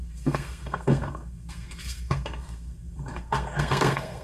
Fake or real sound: fake